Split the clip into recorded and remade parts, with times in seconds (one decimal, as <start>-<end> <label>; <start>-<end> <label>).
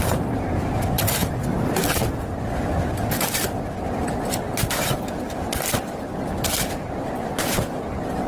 0.0-8.3 recorded